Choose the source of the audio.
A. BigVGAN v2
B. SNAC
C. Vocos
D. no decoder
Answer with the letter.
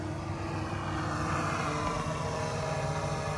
D